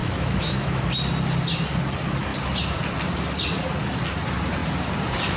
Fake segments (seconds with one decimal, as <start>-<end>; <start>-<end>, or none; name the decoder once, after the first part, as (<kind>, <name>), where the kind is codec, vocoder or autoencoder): 0.0-0.9 (autoencoder, DAC-VAE)